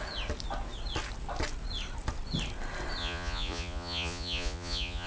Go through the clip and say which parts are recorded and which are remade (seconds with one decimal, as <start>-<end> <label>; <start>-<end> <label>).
0.0-3.0 recorded; 3.0-5.1 remade